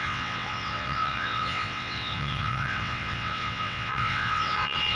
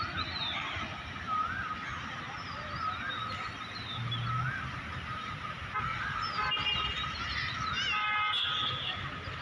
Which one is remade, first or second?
first